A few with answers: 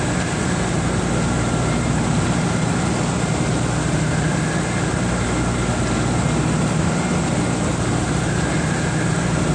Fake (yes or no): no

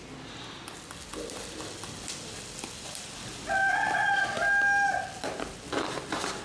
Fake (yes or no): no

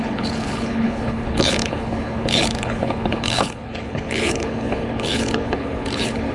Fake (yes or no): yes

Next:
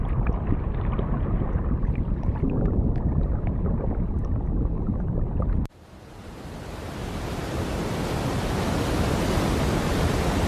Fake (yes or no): no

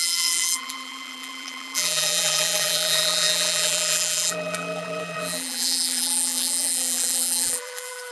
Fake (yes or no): yes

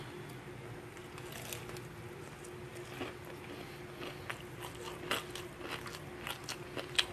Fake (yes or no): no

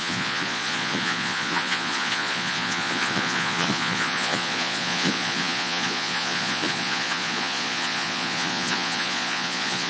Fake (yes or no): yes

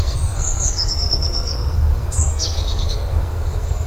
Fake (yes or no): yes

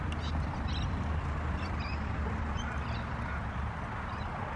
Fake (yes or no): no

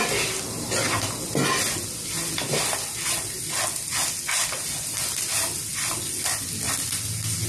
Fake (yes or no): no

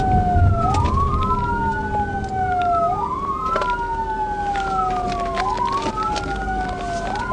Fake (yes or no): no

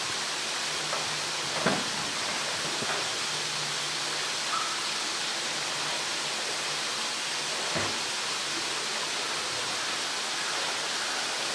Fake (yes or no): no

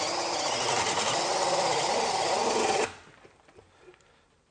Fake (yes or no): no